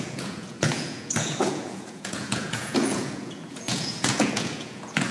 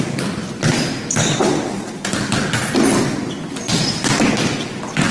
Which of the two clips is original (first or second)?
second